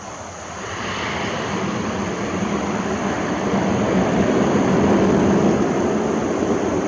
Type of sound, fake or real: real